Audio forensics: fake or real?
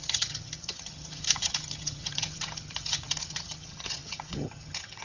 fake